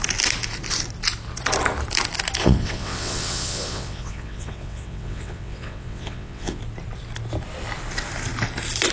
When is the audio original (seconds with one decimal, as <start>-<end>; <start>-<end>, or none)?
0.0-2.4; 6.6-8.9